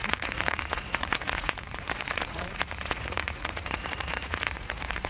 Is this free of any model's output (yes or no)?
no